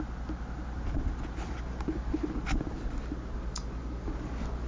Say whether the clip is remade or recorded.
recorded